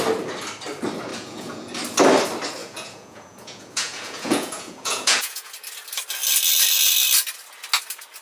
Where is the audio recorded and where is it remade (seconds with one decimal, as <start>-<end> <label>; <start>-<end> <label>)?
0.0-1.1 recorded; 1.1-1.7 remade; 1.7-2.6 recorded; 2.6-5.5 remade; 5.5-8.2 recorded